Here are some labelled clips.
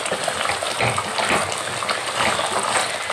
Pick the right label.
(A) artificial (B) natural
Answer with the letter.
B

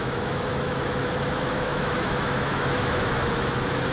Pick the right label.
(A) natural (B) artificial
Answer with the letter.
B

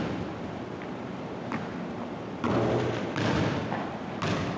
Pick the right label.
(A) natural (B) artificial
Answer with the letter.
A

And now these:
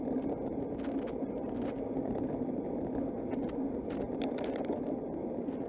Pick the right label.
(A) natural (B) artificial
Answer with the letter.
A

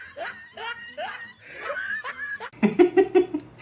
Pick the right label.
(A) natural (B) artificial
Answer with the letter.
A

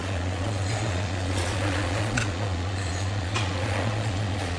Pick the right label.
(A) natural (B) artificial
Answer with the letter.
B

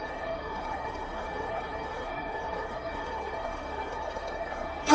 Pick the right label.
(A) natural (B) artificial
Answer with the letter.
B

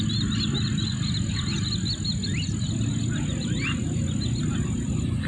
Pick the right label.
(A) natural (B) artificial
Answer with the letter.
B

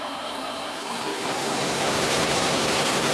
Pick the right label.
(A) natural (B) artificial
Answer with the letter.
B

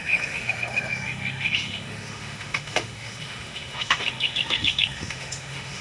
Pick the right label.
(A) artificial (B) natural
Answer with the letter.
A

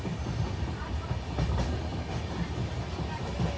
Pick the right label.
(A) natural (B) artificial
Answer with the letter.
A